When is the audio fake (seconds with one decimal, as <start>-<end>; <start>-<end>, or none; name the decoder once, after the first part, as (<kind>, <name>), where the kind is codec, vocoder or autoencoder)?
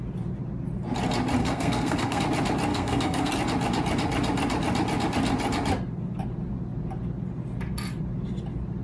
1.4-2.2 (codec, SNAC); 2.7-3.3